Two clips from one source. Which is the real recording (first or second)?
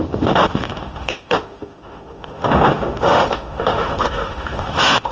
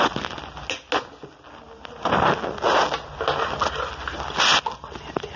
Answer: second